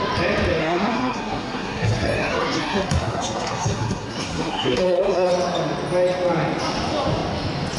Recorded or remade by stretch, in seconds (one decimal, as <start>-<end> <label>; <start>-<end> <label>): 0.0-0.6 recorded; 0.6-5.3 remade; 5.3-7.8 recorded